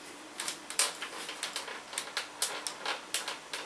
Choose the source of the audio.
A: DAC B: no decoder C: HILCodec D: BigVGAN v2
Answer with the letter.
B